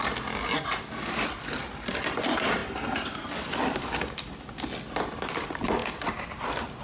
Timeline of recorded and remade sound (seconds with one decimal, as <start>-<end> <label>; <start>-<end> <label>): 0.0-6.8 recorded